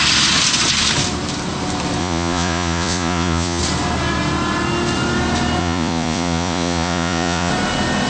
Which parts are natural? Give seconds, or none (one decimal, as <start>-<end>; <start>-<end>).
0.0-2.0; 3.6-5.6; 7.5-8.1